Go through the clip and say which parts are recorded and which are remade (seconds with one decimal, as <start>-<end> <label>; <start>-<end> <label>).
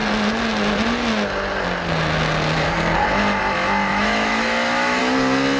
0.0-3.9 recorded; 3.9-5.0 remade; 5.0-5.6 recorded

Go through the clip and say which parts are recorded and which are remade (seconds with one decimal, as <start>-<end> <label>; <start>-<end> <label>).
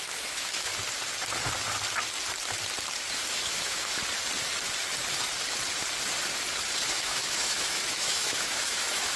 0.0-0.7 remade; 0.7-3.1 recorded; 3.1-4.0 remade; 4.0-6.9 recorded; 6.9-9.2 remade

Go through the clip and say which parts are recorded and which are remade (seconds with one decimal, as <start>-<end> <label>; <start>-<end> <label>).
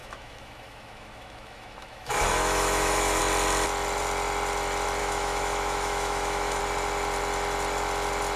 0.0-3.2 remade; 3.2-5.0 recorded; 5.0-6.6 remade; 6.6-8.4 recorded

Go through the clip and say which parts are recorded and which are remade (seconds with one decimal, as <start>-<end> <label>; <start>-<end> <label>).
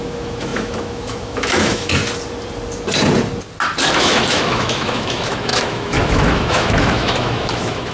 0.0-2.0 remade; 2.0-3.9 recorded; 3.9-7.9 remade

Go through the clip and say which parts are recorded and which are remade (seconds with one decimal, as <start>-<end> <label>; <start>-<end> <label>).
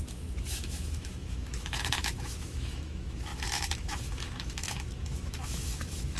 0.0-6.2 remade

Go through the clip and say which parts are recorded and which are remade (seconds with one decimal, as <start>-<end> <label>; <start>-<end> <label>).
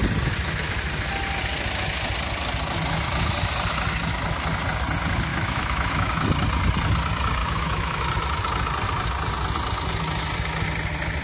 0.0-5.3 recorded; 5.3-6.1 remade; 6.1-7.4 recorded; 7.4-8.0 remade; 8.0-11.2 recorded